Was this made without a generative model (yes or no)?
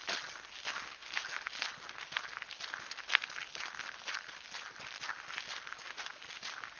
yes